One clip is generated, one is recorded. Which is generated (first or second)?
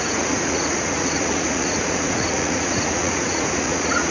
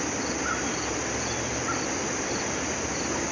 first